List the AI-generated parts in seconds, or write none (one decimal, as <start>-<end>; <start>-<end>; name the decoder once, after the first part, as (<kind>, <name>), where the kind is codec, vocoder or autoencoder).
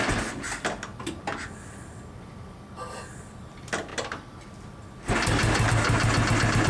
none